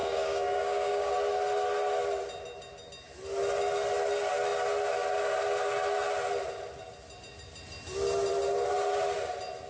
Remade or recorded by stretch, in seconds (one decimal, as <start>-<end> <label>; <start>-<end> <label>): 0.0-1.1 remade; 1.1-9.7 recorded